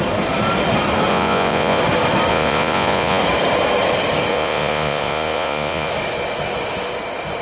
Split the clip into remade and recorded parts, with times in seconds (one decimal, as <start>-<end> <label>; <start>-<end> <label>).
0.0-1.1 recorded; 1.1-1.8 remade; 1.8-2.3 recorded; 2.3-3.2 remade; 3.2-4.3 recorded; 4.3-5.9 remade; 5.9-7.4 recorded

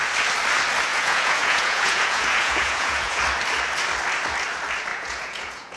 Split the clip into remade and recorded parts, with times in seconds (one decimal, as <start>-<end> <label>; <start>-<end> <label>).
0.0-0.9 recorded; 0.9-3.2 remade; 3.2-4.9 recorded; 4.9-5.8 remade

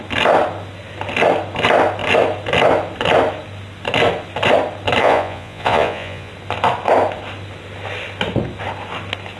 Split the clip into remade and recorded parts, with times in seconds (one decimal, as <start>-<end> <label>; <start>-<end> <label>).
0.0-5.0 recorded; 5.0-6.3 remade; 6.3-9.4 recorded

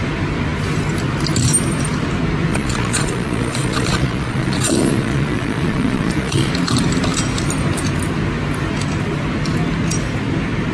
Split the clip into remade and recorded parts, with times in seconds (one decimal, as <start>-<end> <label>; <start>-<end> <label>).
0.0-2.5 recorded; 2.5-6.5 remade; 6.5-10.7 recorded

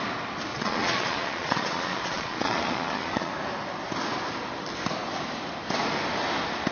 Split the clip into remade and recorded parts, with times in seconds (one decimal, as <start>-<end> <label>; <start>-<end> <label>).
0.0-0.5 recorded; 0.5-3.3 remade; 3.3-6.7 recorded

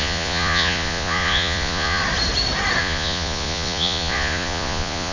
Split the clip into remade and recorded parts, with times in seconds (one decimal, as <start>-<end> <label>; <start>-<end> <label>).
0.0-2.0 remade; 2.0-2.8 recorded; 2.8-5.1 remade